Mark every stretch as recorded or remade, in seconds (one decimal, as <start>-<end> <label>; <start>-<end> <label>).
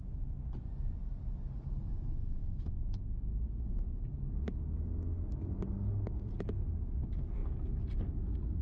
0.0-2.4 recorded; 2.4-4.4 remade; 4.4-8.6 recorded